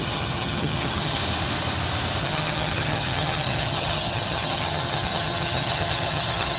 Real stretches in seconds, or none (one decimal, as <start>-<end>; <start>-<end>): 1.2-2.2